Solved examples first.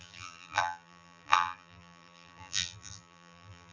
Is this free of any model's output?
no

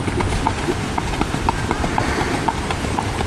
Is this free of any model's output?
no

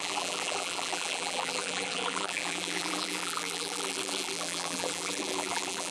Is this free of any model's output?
no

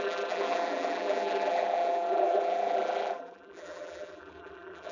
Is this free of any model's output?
no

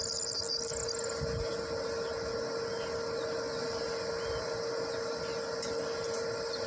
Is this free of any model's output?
yes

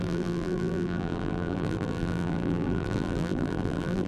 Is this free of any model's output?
no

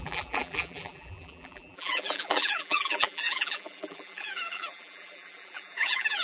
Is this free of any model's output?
no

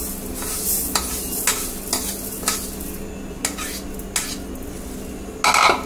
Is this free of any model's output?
yes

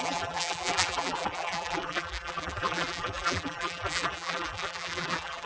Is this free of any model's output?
no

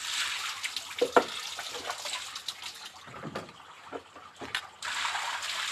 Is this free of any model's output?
yes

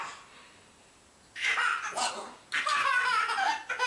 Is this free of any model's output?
yes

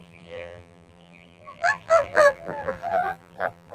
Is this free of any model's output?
no